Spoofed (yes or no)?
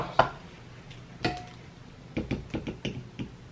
no